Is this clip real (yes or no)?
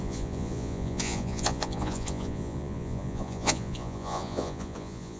no